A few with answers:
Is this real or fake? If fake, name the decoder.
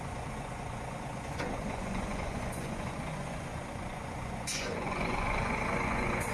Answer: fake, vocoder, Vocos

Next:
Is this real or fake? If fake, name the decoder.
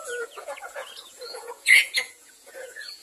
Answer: fake, vocoder, Vocos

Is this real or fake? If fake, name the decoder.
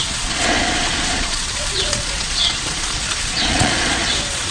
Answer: fake, vocoder, Vocos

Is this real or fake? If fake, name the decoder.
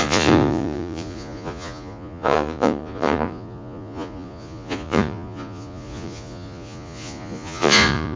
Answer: fake, vocoder, Vocos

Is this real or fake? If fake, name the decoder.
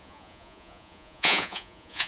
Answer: fake, vocoder, Vocos